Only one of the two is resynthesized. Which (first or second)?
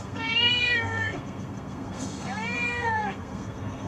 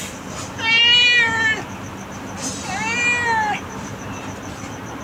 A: first